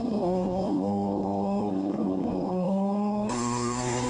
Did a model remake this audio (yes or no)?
yes